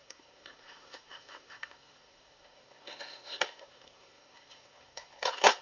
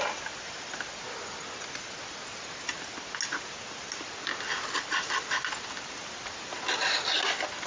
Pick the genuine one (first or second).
second